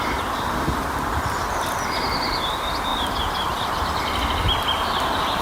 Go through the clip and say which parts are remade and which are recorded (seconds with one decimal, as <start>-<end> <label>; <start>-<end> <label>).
0.0-2.9 recorded; 2.9-5.4 remade